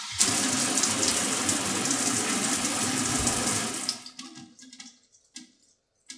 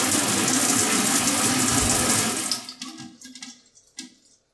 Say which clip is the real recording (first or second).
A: second